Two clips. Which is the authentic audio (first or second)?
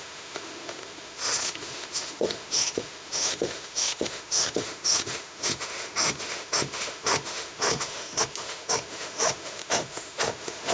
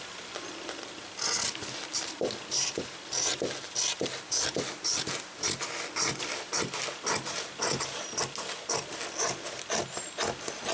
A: second